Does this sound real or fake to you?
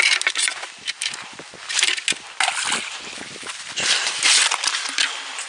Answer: real